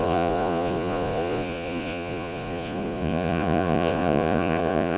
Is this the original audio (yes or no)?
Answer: no